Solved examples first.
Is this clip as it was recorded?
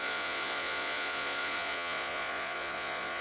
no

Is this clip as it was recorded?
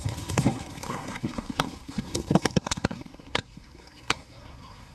no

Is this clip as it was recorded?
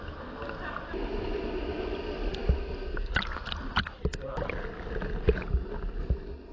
yes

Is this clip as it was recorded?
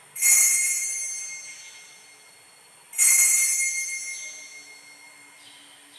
yes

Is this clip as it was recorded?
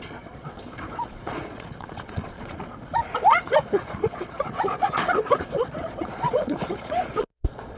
no